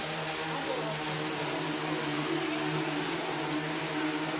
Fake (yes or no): no